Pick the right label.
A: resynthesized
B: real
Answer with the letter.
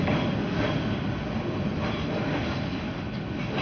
B